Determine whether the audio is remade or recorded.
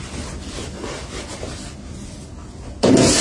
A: recorded